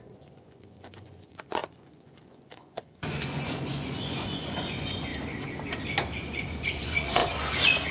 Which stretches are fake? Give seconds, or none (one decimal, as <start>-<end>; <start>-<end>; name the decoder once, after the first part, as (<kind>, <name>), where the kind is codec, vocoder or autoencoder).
0.0-5.1 (vocoder, Vocos); 6.2-7.9